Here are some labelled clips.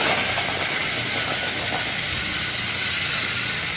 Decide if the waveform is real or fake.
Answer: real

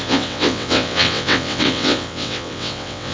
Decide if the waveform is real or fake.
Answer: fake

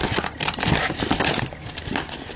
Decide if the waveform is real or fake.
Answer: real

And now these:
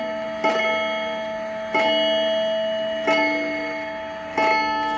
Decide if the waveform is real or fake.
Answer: real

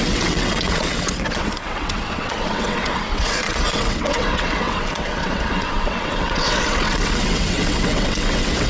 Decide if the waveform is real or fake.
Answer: fake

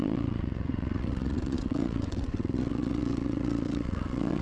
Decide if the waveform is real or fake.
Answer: fake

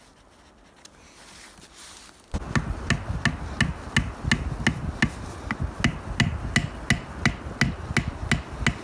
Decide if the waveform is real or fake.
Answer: real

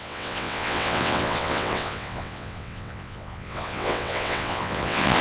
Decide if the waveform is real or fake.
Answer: fake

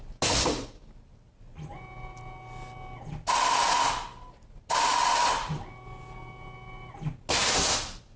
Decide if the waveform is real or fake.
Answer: real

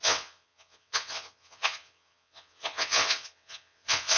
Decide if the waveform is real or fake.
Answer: fake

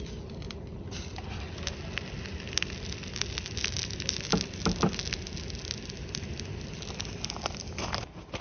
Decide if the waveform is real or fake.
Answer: real